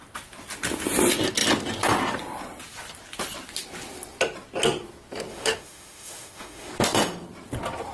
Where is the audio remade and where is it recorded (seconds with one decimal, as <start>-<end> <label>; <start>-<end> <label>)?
0.0-5.3 recorded; 5.3-6.7 remade; 6.7-7.9 recorded